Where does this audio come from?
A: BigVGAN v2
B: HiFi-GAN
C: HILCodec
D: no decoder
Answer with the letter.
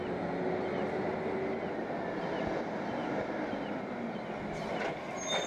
D